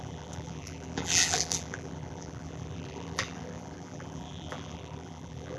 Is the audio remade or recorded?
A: remade